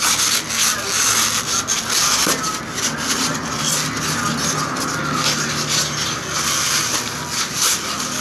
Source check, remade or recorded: recorded